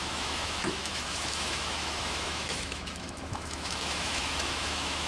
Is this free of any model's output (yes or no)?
no